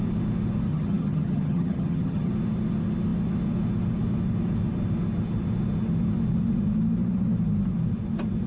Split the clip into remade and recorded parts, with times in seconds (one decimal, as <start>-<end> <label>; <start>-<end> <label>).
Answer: 0.0-0.7 recorded; 0.7-2.3 remade; 2.3-8.5 recorded